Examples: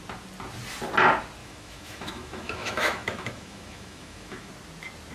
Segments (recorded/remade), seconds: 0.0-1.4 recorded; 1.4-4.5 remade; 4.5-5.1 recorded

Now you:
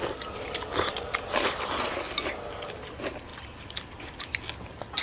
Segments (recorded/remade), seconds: 0.0-5.0 recorded

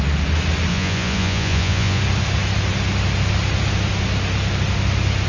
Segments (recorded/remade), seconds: 0.0-0.7 recorded; 0.7-2.0 remade; 2.0-5.3 recorded

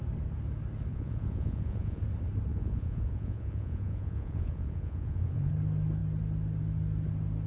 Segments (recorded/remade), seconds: 0.0-0.9 recorded; 0.9-2.0 remade; 2.0-2.5 recorded; 2.5-5.5 remade; 5.5-7.5 recorded

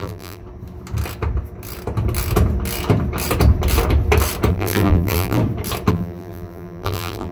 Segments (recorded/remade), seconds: 0.0-0.4 remade; 0.4-4.5 recorded; 4.5-5.4 remade; 5.4-5.9 recorded; 5.9-7.3 remade

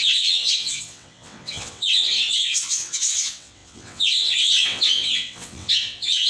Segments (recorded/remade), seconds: 0.0-6.3 remade